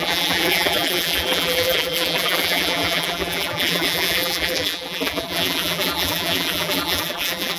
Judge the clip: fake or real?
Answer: fake